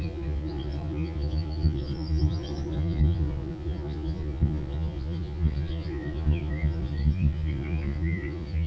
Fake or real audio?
fake